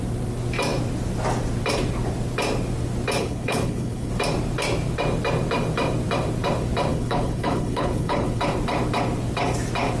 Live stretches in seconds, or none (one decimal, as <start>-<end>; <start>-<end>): 0.0-3.2; 4.1-6.9; 8.4-10.0